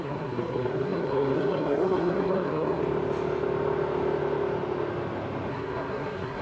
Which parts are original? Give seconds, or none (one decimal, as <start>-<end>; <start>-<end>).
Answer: 2.8-5.5